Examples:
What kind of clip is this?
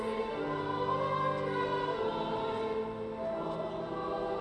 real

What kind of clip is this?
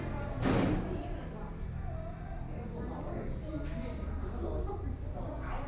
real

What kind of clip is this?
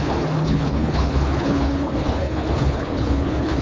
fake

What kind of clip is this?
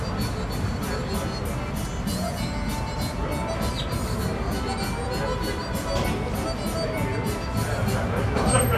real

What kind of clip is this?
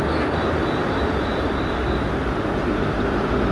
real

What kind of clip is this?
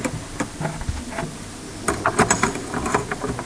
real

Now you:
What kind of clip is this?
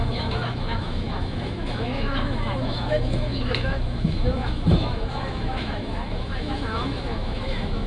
fake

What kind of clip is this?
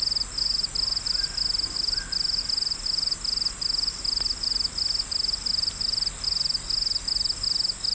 real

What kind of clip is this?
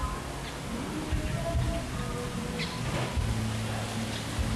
real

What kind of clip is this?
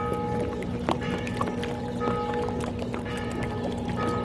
real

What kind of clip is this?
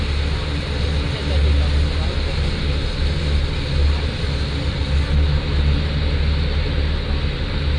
real